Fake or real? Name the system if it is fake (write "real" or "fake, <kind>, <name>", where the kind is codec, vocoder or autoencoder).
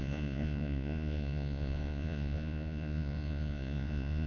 fake, vocoder, Vocos